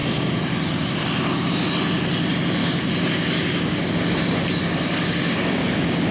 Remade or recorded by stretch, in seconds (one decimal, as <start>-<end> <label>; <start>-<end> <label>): 0.0-2.6 recorded; 2.6-3.9 remade; 3.9-4.6 recorded; 4.6-6.1 remade